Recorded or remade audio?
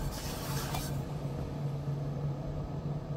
recorded